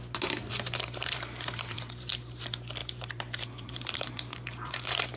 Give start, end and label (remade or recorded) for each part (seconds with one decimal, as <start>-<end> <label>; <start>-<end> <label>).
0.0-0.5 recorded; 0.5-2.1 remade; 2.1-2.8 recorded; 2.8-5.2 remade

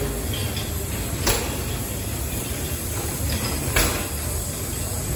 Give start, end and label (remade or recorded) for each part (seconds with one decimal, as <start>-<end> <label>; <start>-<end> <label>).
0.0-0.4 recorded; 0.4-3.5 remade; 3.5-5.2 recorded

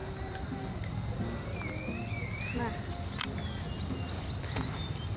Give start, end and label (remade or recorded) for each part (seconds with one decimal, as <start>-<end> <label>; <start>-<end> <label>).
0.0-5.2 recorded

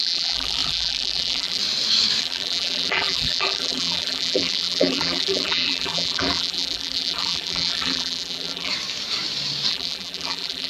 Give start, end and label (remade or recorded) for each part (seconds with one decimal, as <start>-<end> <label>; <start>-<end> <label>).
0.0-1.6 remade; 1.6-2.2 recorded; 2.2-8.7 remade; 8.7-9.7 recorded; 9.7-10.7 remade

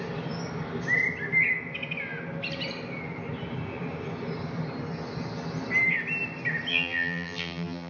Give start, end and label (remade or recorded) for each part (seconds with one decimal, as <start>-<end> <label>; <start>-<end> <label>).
0.0-6.7 recorded; 6.7-7.9 remade